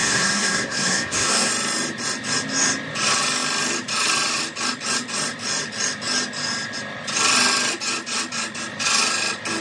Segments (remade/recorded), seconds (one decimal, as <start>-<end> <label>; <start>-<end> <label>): 0.0-1.5 remade; 1.5-9.6 recorded